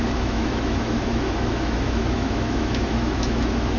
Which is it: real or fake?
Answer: fake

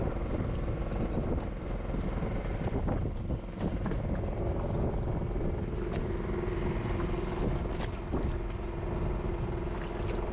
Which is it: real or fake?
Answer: real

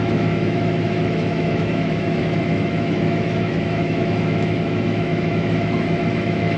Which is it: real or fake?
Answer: fake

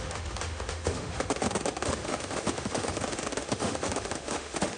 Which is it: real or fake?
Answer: fake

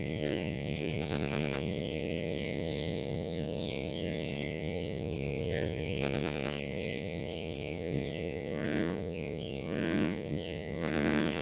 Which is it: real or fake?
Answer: fake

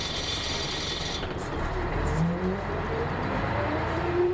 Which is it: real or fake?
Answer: fake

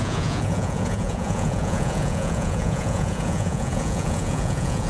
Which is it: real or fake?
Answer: fake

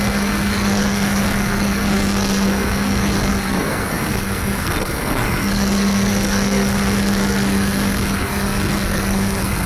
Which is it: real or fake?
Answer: fake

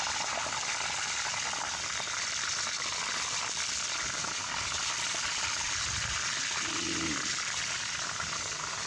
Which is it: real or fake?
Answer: real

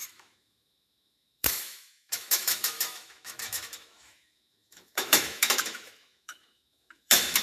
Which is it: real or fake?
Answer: fake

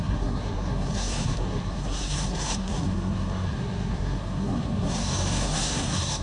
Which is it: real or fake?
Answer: fake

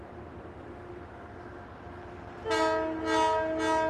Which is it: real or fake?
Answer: real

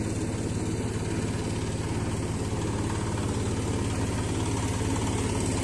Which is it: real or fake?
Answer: real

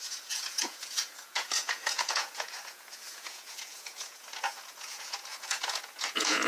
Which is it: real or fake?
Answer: fake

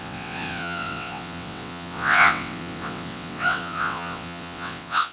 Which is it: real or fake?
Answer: fake